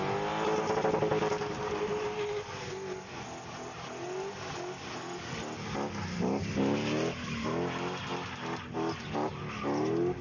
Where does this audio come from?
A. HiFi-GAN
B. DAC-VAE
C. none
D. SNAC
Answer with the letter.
C